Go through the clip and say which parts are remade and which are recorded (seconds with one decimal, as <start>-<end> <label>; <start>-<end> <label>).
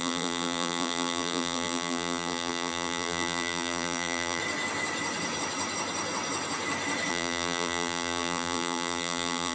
0.0-4.4 remade; 4.4-7.1 recorded; 7.1-9.5 remade